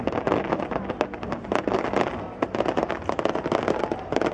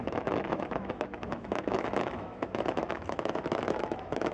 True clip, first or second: first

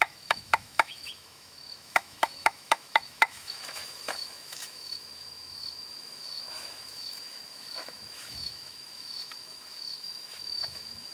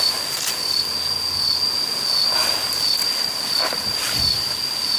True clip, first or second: second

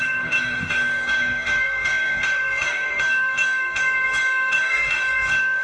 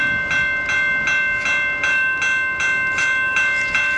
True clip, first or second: second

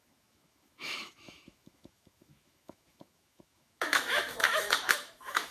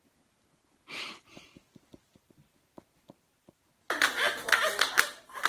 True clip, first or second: second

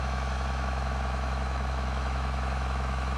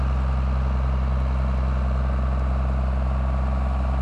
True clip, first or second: second